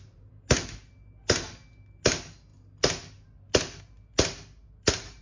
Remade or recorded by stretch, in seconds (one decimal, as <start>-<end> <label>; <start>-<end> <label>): 0.0-5.2 recorded